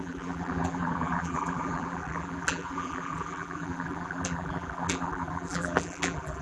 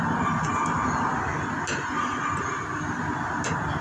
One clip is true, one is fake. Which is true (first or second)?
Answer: second